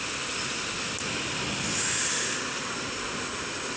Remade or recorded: recorded